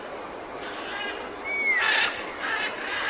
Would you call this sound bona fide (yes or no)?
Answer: yes